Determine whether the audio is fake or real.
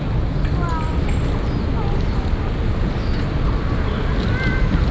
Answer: real